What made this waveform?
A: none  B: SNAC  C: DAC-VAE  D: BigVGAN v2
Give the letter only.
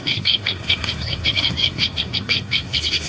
B